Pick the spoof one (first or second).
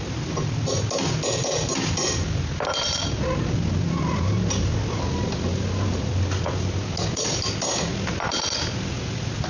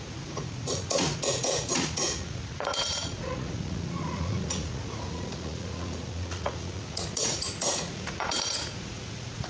second